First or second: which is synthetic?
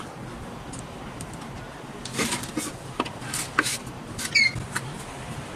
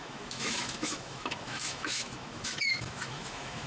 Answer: second